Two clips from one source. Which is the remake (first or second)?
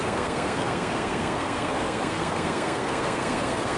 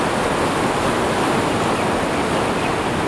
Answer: first